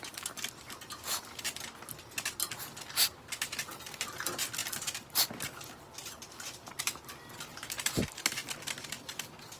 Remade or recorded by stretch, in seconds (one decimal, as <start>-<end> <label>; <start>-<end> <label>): 0.0-9.6 recorded